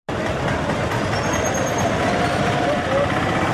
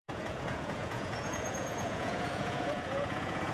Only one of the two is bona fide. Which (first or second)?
first